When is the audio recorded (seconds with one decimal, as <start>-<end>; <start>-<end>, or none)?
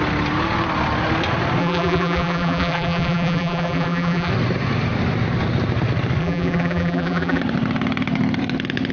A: 0.0-1.6; 4.3-6.2; 7.4-8.9